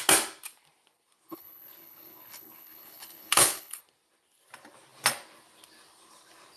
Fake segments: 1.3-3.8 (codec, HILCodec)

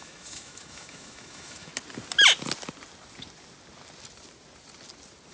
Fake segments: 0.0-1.7 (autoencoder, DAC-VAE)

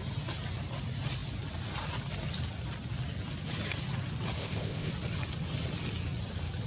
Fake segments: 4.4-4.9 (codec, ZipCodec)

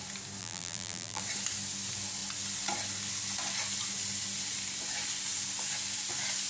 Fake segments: 0.4-1.2 (vocoder, BigVGAN v2)

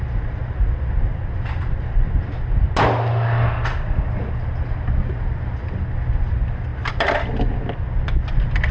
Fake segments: none

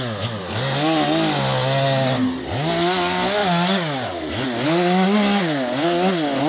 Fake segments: none